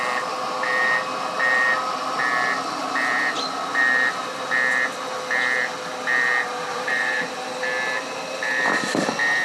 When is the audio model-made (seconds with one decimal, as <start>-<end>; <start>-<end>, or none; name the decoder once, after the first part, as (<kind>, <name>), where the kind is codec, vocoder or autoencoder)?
6.7-7.2 (vocoder, BigVGAN v2)